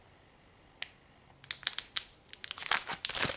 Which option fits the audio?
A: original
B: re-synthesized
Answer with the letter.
A